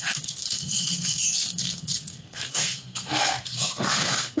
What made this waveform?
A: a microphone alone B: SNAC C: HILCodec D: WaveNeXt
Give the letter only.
B